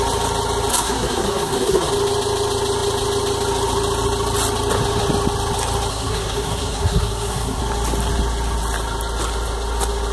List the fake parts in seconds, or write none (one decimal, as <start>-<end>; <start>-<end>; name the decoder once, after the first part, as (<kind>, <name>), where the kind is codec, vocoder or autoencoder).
0.7-1.9 (codec, SNAC); 5.9-7.6